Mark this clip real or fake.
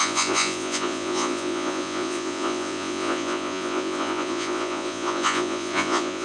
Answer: fake